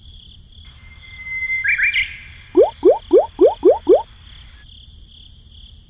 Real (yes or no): yes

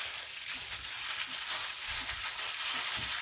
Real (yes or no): yes